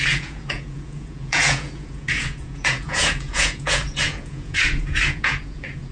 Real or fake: fake